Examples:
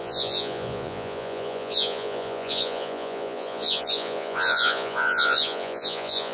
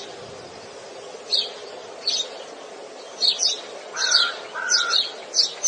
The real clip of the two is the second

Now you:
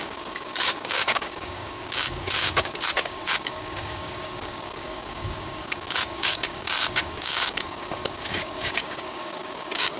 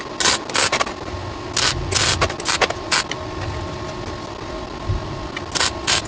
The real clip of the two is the second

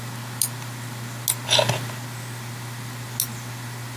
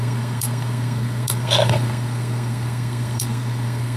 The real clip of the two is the first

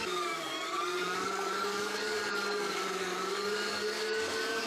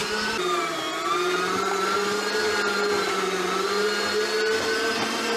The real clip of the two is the second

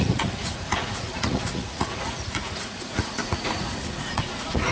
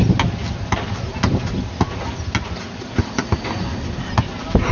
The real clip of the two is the second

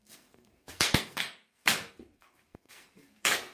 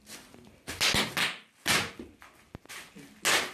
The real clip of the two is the second